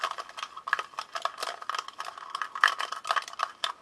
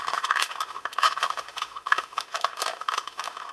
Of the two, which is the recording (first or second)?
first